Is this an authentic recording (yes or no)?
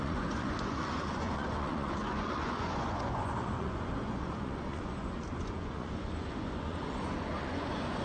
no